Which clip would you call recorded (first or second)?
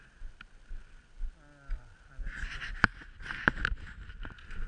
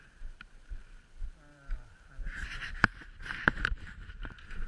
first